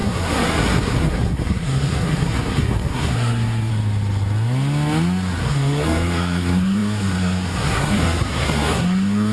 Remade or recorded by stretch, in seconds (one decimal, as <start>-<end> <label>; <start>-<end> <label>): 0.0-3.7 remade; 3.7-5.4 recorded; 5.4-9.3 remade